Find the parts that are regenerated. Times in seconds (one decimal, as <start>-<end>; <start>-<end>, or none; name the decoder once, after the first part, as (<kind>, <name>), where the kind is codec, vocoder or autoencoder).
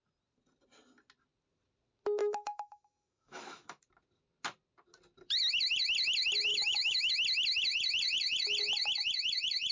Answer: 2.2-3.8 (autoencoder, DAC-VAE); 6.5-7.1